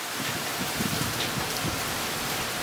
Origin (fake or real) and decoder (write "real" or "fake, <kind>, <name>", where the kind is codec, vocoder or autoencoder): real